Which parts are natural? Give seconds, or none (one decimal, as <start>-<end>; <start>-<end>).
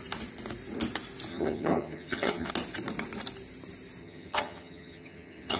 0.0-1.3; 2.5-4.0